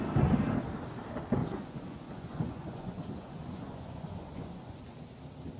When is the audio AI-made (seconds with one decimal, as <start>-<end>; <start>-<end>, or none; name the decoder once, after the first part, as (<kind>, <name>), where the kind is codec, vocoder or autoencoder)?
1.4-4.8 (vocoder, Vocos)